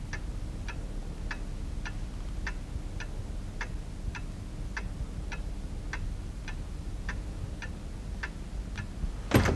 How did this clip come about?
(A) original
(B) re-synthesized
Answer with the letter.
A